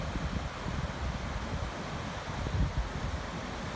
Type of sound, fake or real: real